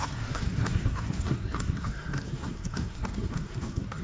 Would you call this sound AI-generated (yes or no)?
yes